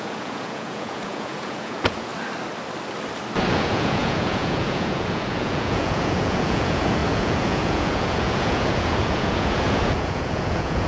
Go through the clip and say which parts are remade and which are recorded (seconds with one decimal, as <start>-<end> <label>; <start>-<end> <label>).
0.0-2.1 remade; 2.1-3.5 recorded; 3.5-10.9 remade